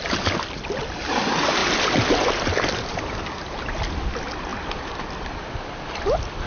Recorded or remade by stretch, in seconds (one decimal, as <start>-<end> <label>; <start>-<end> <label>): 0.0-6.5 recorded